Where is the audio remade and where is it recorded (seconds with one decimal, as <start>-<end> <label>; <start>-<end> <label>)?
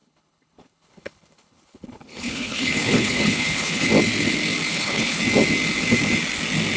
0.0-3.9 remade; 3.9-4.7 recorded; 4.7-5.2 remade; 5.2-6.8 recorded